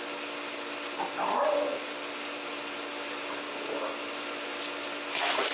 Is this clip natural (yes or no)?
yes